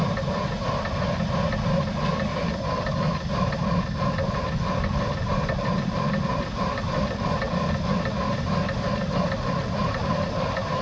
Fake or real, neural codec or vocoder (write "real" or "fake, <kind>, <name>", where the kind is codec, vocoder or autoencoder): real